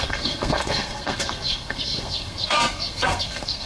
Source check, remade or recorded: remade